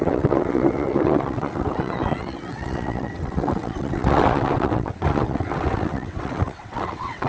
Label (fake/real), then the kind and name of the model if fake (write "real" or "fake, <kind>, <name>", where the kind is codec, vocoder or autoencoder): fake, vocoder, WaveNeXt